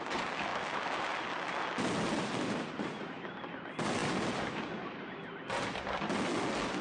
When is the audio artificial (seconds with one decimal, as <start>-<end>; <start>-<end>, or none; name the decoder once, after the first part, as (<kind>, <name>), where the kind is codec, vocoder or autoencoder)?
none